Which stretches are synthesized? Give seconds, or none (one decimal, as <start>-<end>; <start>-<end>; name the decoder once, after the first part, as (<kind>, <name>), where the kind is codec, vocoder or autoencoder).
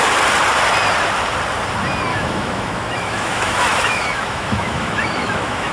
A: 2.1-5.7 (autoencoder, DAC-VAE)